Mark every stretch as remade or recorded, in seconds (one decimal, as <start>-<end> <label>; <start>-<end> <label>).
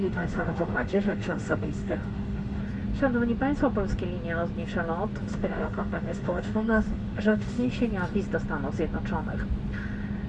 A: 0.0-2.6 remade; 2.6-5.3 recorded; 5.3-7.7 remade; 7.7-10.3 recorded